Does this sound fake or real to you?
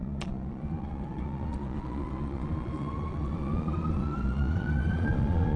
fake